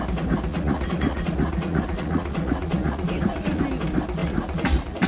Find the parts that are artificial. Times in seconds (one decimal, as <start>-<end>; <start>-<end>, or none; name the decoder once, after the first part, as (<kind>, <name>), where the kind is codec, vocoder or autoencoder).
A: 0.5-3.6 (vocoder, Vocos); 4.2-5.1